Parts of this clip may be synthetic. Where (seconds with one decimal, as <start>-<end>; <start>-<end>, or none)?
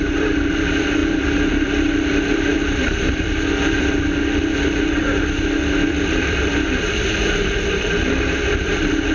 0.0-9.1